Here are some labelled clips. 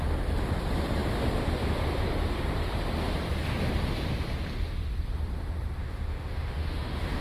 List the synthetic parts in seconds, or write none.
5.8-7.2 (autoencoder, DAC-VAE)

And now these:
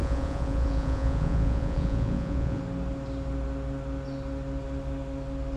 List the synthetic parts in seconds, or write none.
0.0-2.6 (vocoder, Vocos)

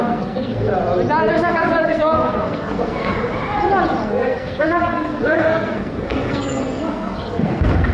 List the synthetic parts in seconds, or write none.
0.0-0.7 (codec, SNAC); 1.3-3.1; 4.0-7.9

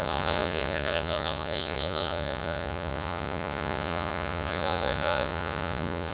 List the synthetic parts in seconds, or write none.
0.0-6.1 (vocoder, Vocos)

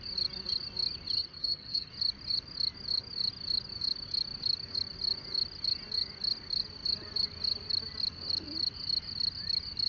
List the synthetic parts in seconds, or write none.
1.2-1.9 (vocoder, HiFi-GAN)

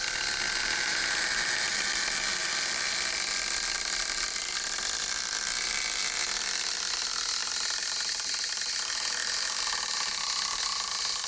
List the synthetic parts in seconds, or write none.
none

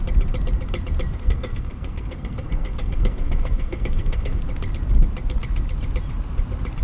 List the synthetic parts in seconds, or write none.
1.2-4.4 (codec, SNAC)